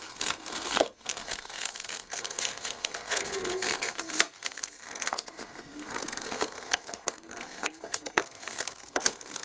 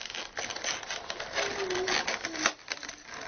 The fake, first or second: first